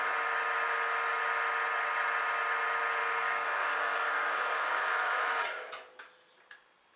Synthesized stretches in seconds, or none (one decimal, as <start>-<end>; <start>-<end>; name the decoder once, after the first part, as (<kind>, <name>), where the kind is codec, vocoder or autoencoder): 3.0-5.7 (codec, DAC)